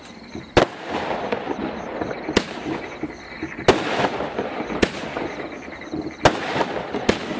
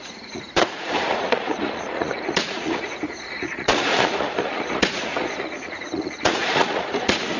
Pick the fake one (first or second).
second